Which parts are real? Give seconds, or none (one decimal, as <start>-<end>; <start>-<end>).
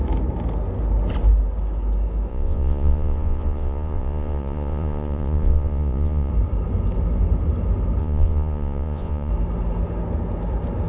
0.0-2.3; 6.3-8.0; 9.3-10.9